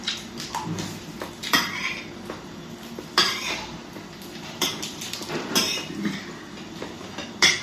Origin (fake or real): fake